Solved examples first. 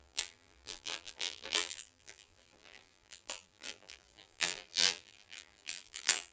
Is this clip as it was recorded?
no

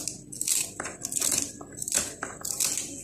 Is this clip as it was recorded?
yes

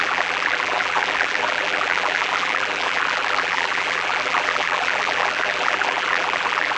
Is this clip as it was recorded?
no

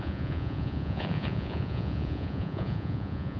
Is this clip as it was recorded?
no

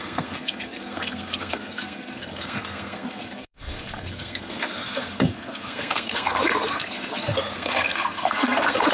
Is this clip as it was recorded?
no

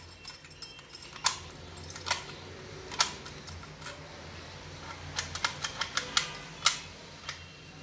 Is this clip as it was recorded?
yes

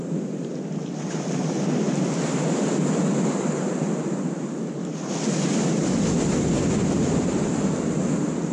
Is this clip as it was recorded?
yes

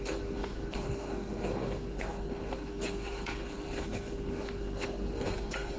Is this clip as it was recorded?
no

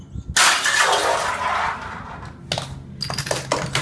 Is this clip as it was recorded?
yes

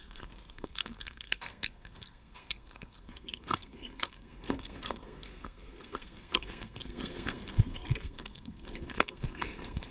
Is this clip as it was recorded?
no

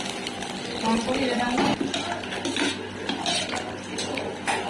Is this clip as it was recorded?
yes